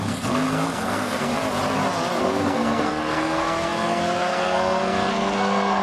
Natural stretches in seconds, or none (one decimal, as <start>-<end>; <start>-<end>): 1.3-2.2